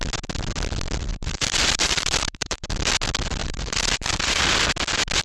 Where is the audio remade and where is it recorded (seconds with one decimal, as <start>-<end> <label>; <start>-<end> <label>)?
0.0-1.1 recorded; 1.1-2.7 remade; 2.7-3.4 recorded; 3.4-4.4 remade; 4.4-5.2 recorded